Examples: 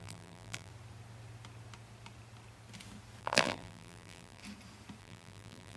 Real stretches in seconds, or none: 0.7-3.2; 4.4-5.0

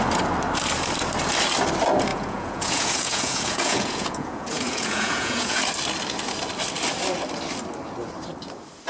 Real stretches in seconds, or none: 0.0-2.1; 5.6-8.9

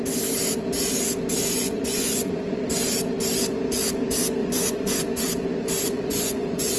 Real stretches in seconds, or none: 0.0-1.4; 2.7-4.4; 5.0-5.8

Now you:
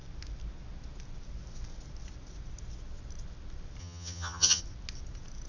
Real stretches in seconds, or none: 0.0-3.8; 4.6-5.5

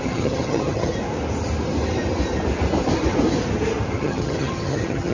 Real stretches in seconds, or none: 0.9-4.0

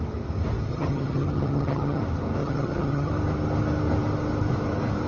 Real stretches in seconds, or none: 0.0-0.7; 2.0-2.4; 3.1-5.1

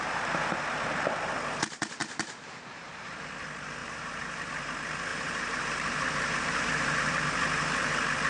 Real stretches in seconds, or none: 0.0-2.0; 2.9-3.8; 4.5-5.1; 7.2-8.3

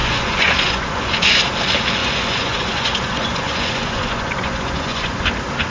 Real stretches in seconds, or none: 1.4-2.0; 5.2-5.7